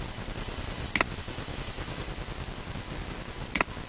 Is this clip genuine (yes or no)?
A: yes